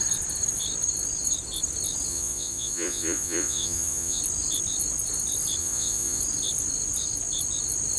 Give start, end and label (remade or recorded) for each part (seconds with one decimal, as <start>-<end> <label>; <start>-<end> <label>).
0.0-2.1 recorded; 2.1-4.2 remade; 4.2-5.6 recorded; 5.6-6.2 remade; 6.2-8.0 recorded